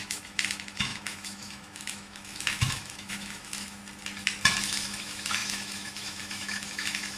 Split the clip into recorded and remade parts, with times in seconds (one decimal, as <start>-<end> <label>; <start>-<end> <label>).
0.0-3.8 remade; 3.8-4.6 recorded; 4.6-7.2 remade